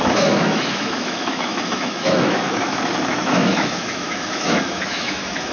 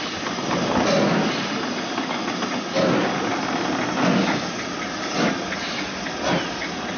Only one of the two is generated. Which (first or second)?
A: first